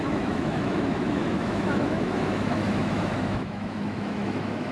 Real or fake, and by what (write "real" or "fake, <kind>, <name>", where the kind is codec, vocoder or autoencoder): fake, autoencoder, DAC-VAE